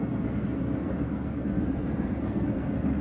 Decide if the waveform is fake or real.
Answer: fake